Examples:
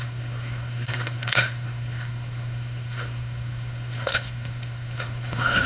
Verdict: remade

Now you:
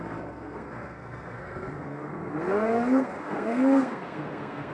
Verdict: remade